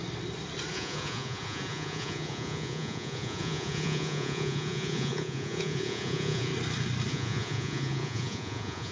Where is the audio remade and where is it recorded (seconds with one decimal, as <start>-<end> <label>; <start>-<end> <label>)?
0.0-0.7 recorded; 0.7-6.5 remade; 6.5-7.1 recorded; 7.1-8.9 remade